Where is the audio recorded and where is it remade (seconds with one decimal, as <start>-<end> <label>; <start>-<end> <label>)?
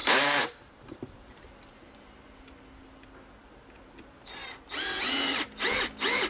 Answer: 0.0-2.0 remade; 2.0-6.3 recorded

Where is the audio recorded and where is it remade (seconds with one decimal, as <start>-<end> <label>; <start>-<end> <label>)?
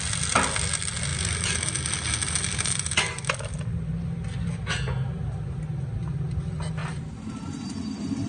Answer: 0.0-8.3 recorded